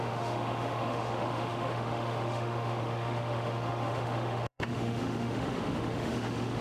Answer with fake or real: fake